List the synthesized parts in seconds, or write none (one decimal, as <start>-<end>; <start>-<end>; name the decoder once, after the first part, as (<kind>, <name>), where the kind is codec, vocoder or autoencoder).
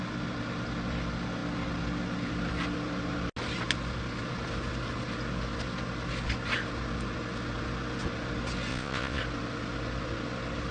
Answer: 8.7-9.2 (vocoder, Vocos)